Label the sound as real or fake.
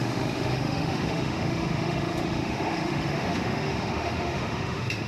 fake